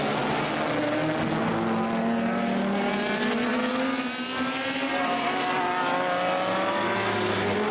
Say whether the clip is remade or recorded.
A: recorded